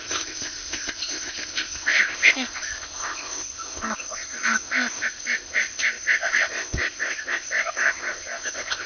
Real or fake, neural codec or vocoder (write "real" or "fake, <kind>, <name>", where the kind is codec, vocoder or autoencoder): fake, codec, ZipCodec